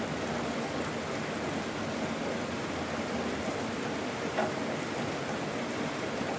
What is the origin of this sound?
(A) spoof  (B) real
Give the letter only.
B